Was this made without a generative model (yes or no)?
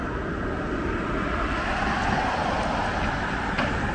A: yes